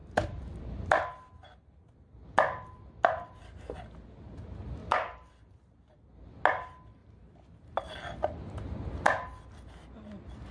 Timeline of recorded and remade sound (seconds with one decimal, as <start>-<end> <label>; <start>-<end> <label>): 0.0-3.4 remade; 3.4-4.8 recorded; 4.8-6.3 remade; 6.3-10.5 recorded